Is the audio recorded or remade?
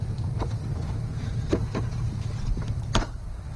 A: remade